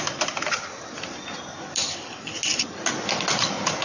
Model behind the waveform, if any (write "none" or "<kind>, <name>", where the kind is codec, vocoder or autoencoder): none